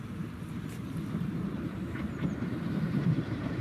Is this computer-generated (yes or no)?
yes